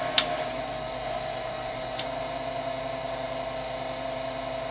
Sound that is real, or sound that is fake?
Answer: real